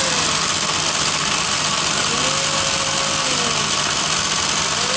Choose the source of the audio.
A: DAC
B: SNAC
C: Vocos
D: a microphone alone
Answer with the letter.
D